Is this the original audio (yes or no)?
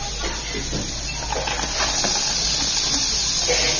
yes